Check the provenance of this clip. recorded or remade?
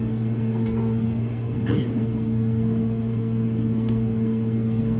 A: remade